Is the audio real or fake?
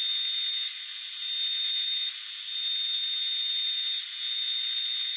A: real